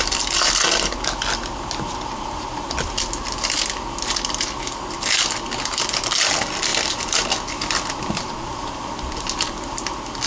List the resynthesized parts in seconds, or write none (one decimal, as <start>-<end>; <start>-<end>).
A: none